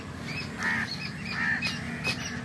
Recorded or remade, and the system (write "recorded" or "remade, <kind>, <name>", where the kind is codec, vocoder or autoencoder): recorded